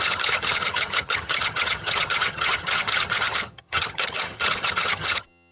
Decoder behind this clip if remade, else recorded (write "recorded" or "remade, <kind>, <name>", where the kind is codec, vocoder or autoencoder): remade, vocoder, HiFi-GAN